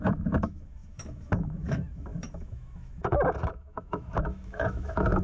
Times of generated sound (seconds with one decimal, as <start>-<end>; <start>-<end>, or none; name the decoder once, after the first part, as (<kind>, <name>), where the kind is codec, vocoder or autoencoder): 0.0-5.2 (autoencoder, DAC-VAE)